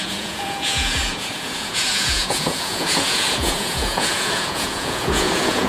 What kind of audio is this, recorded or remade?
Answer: remade